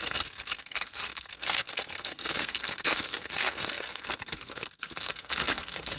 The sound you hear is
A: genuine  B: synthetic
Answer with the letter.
B